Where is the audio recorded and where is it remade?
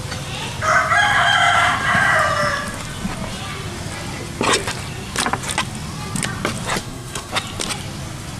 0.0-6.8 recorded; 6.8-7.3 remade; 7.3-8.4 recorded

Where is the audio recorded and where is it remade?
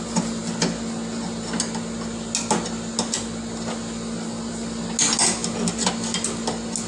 0.0-6.9 recorded